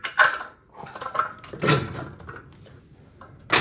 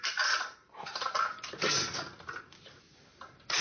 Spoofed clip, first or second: second